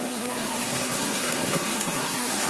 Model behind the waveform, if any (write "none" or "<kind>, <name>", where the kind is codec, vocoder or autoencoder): codec, SNAC